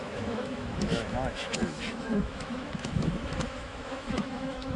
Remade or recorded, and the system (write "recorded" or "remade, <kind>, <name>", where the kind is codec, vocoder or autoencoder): remade, autoencoder, DAC-VAE